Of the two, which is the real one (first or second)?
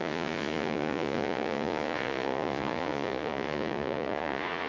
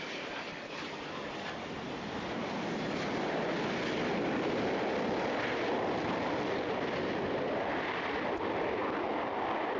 second